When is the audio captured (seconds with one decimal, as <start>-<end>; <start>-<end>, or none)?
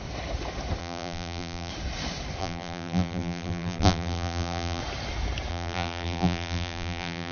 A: 0.0-0.8; 1.7-2.4; 4.8-5.5